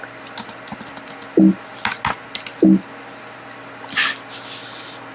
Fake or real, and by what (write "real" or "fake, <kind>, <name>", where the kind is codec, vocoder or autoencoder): real